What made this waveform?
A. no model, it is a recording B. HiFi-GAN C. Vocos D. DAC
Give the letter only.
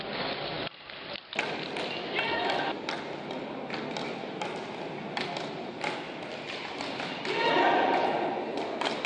A